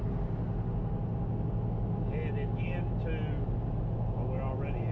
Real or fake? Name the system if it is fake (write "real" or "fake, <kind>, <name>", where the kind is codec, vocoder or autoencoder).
real